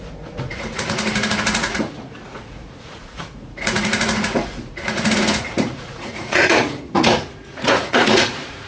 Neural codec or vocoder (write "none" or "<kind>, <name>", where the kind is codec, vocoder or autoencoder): vocoder, Vocos